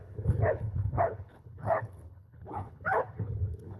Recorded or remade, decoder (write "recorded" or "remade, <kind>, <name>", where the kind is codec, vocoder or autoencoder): remade, codec, HILCodec